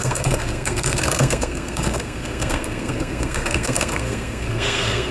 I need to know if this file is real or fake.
fake